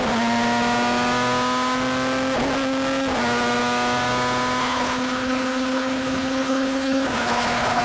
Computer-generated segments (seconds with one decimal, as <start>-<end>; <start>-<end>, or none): 4.6-7.8